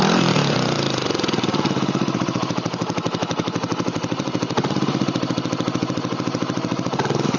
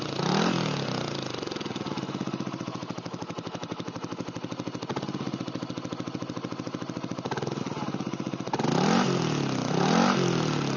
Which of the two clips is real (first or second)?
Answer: second